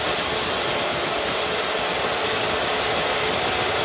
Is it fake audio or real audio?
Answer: real